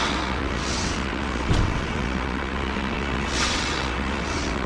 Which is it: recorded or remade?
remade